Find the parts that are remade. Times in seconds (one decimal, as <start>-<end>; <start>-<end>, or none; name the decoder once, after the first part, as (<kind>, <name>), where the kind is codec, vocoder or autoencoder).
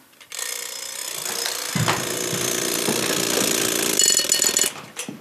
none